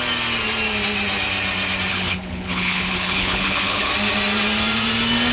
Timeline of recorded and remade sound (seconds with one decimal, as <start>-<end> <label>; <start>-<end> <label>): 0.0-1.9 recorded; 1.9-3.9 remade; 3.9-5.3 recorded

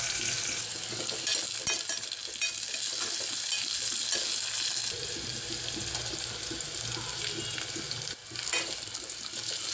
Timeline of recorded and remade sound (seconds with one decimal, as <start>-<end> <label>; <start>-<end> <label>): 0.0-9.7 recorded

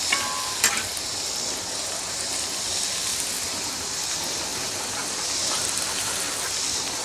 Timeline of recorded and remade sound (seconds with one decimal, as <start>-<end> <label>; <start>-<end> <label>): 0.0-7.0 recorded

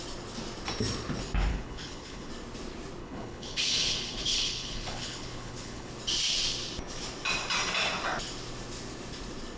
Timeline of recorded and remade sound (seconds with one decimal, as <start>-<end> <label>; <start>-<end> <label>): 0.0-1.5 recorded; 1.5-2.3 remade; 2.3-3.0 recorded; 3.0-5.9 remade; 5.9-9.6 recorded

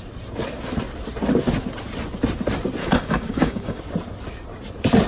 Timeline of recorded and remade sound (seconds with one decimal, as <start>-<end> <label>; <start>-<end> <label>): 0.0-2.8 recorded; 2.8-3.8 remade; 3.8-5.1 recorded

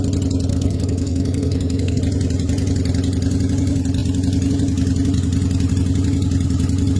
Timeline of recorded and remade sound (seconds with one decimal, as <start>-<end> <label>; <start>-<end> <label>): 0.0-0.5 recorded; 0.5-2.0 remade; 2.0-7.0 recorded

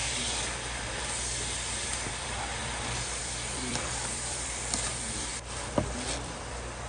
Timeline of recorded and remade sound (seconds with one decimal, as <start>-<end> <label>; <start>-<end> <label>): 0.0-2.1 recorded; 2.1-5.3 remade; 5.3-6.4 recorded; 6.4-6.9 remade

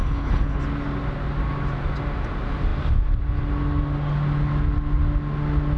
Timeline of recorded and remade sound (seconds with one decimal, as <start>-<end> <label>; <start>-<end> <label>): 0.0-0.6 remade; 0.6-5.8 recorded